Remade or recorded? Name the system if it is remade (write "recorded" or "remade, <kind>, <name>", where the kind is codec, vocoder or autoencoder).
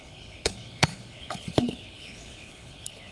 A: remade, codec, HILCodec